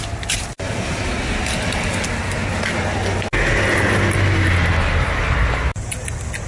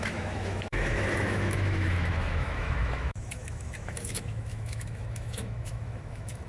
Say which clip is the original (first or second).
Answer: first